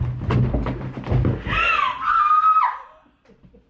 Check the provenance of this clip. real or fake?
real